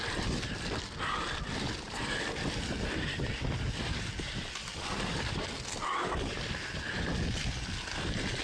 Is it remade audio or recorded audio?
recorded